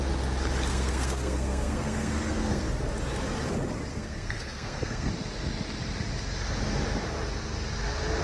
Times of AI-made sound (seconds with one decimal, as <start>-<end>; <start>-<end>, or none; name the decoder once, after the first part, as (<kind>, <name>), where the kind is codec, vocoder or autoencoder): 0.7-2.6 (codec, SNAC); 3.9-5.1